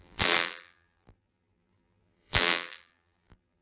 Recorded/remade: remade